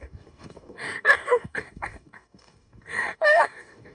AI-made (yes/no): yes